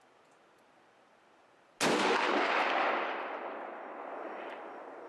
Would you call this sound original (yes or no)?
yes